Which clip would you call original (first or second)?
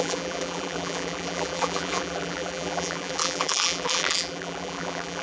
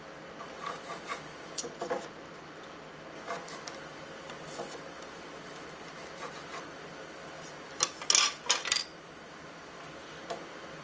second